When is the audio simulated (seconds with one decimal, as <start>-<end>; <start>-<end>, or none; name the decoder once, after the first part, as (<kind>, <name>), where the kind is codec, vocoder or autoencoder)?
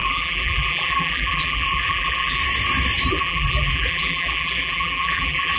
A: 0.0-2.4 (vocoder, BigVGAN v2); 3.1-5.6